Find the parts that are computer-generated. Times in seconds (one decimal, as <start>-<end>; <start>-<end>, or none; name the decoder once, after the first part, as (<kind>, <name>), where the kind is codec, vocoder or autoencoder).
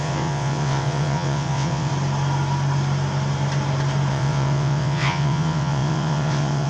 0.0-1.9 (vocoder, WaveNeXt); 4.1-6.7